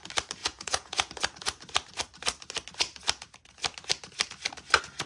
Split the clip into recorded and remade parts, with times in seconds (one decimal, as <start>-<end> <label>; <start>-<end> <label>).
0.0-0.4 recorded; 0.4-1.1 remade; 1.1-5.1 recorded